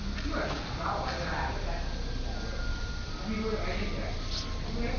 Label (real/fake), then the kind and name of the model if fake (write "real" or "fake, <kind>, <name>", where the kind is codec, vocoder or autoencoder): real